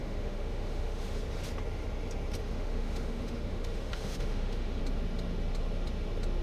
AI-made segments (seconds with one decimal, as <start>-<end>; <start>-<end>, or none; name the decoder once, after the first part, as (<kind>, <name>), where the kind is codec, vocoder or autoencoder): 0.0-1.2 (autoencoder, DAC-VAE); 2.4-4.8